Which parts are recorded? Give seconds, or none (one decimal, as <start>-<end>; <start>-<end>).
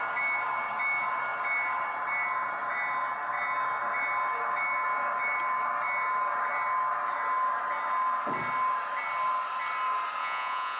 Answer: 0.0-10.2